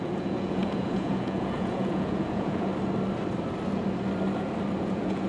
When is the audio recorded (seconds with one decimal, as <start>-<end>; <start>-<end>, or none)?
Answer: 2.7-4.8